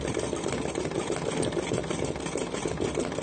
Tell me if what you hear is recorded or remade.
recorded